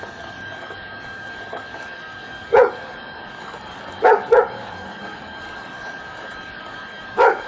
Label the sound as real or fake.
fake